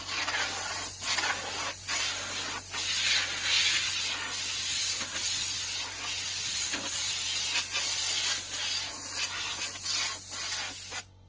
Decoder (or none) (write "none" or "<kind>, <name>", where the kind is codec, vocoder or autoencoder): none